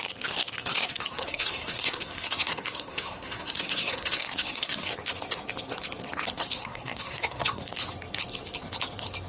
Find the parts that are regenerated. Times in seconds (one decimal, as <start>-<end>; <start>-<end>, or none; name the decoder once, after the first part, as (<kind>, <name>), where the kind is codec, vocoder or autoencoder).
0.6-4.9 (codec, SNAC); 6.6-7.6